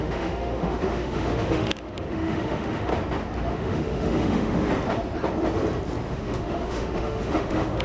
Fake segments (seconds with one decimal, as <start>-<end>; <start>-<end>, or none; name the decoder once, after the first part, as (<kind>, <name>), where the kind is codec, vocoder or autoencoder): 0.0-2.9 (autoencoder, DAC-VAE); 3.5-4.7; 6.1-7.8